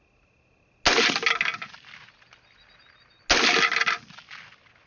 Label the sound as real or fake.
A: real